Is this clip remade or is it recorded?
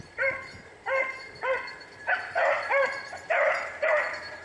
remade